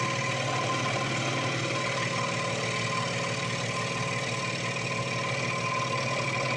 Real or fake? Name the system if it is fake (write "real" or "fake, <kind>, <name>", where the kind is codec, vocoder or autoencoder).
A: real